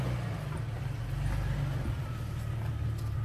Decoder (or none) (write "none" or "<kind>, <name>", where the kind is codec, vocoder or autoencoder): none